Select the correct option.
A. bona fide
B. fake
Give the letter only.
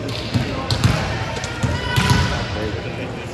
A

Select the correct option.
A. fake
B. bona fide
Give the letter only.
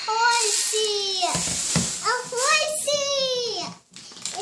B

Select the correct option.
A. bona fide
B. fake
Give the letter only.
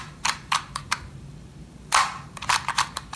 B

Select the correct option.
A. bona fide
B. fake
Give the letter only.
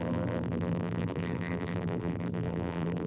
B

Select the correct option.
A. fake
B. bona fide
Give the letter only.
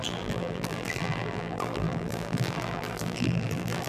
A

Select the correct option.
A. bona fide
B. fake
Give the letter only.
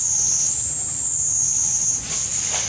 A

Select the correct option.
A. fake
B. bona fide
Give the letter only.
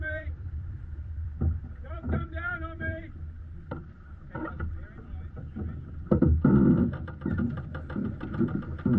A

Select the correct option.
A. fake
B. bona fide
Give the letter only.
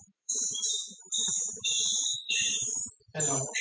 A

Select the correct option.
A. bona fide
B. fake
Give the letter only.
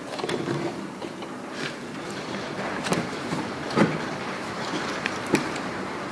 B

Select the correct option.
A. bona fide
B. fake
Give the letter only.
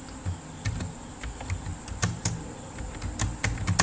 A